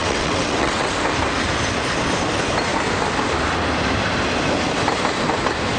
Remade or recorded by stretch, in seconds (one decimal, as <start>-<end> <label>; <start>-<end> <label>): 0.0-0.9 remade; 0.9-5.8 recorded